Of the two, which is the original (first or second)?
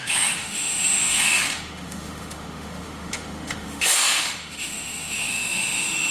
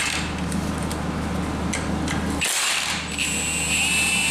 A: second